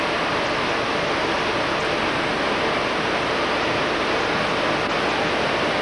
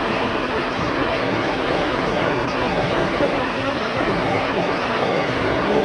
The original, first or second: first